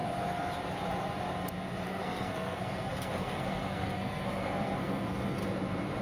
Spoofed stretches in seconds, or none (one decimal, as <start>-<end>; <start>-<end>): 1.8-5.4